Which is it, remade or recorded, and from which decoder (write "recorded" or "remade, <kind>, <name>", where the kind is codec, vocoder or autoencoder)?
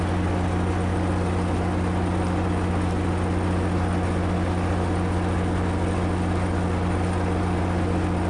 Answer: recorded